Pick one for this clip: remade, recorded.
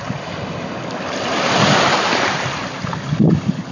recorded